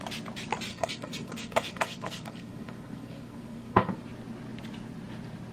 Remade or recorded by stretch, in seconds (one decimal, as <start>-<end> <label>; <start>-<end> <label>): 0.0-0.7 recorded; 0.7-4.0 remade; 4.0-5.5 recorded